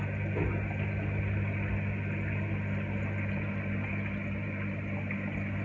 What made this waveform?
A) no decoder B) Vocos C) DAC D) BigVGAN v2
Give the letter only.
A